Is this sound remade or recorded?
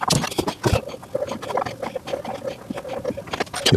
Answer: recorded